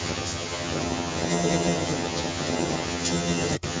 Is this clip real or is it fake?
fake